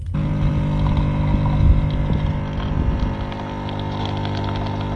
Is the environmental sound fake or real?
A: real